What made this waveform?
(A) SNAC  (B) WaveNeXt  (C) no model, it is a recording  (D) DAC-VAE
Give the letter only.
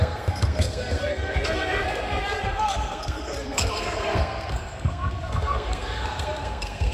A